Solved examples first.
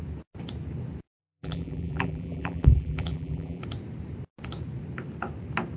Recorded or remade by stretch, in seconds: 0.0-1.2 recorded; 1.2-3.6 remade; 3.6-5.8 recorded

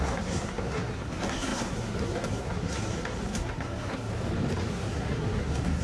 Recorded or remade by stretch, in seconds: 0.0-4.1 remade; 4.1-4.7 recorded; 4.7-5.8 remade